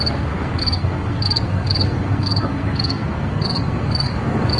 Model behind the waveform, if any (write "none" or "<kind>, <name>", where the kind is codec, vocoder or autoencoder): codec, SNAC